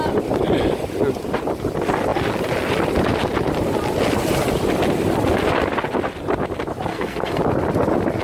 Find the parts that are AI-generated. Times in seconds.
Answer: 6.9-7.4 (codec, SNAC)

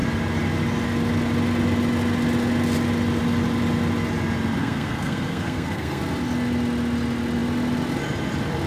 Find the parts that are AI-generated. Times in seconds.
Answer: 4.6-6.0 (codec, SNAC)

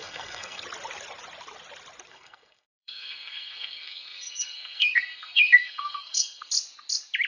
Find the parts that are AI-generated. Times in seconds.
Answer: 0.0-0.6 (codec, SNAC); 2.1-6.5